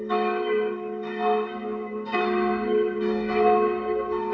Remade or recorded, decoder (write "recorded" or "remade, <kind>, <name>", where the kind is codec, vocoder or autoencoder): remade, codec, SNAC